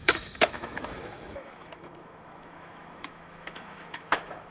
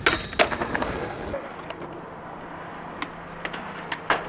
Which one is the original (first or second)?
second